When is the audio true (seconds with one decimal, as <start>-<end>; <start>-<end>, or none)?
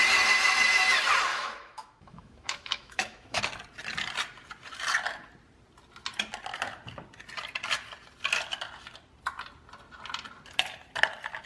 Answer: 0.0-1.3; 3.4-11.5